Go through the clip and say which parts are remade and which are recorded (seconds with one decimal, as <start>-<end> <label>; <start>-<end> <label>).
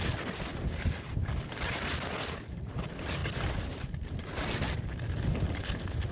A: 0.0-6.1 recorded